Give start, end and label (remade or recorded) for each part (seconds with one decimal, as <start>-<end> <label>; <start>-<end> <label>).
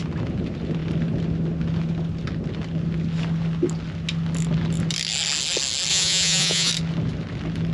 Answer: 0.0-5.9 recorded; 5.9-6.7 remade; 6.7-7.7 recorded